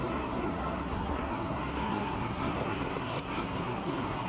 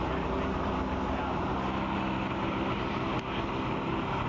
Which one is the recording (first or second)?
second